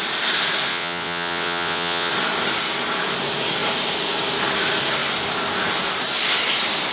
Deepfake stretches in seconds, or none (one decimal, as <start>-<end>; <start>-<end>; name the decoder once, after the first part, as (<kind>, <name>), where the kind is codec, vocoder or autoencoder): 0.7-2.1 (vocoder, WaveNeXt)